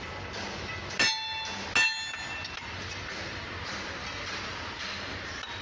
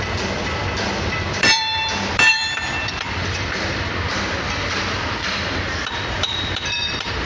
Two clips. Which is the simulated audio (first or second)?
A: second